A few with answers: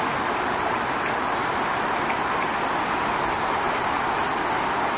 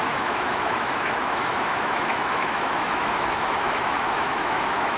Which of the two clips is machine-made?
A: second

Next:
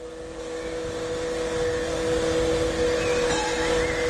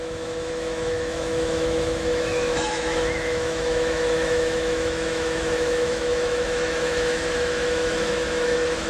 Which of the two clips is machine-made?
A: second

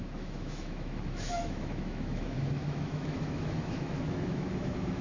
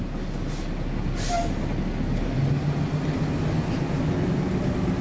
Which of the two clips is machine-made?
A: first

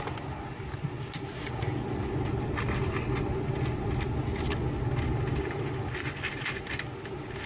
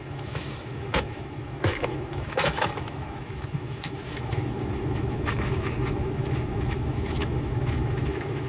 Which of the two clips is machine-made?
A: second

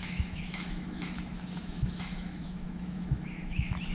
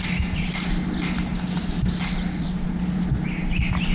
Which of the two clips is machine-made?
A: first